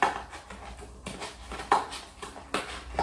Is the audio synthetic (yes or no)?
no